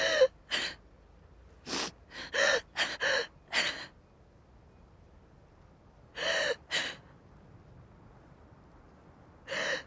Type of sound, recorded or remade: recorded